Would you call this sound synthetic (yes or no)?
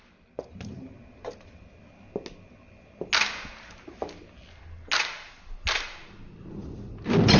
no